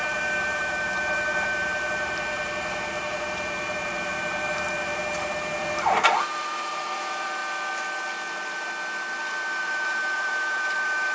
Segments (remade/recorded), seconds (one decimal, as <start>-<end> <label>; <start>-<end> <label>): 0.0-7.4 remade; 7.4-9.6 recorded; 9.6-11.1 remade